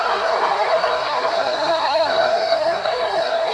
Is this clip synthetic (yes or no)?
yes